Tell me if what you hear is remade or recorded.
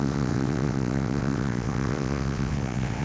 remade